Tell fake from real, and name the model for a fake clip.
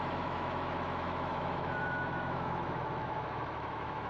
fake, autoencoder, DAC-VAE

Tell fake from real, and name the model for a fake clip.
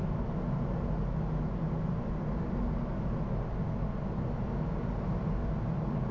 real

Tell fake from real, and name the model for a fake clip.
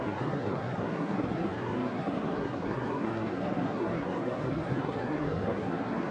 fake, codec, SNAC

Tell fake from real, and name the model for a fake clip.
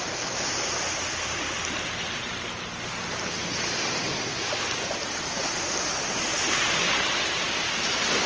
real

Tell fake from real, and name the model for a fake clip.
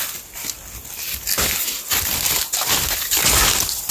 real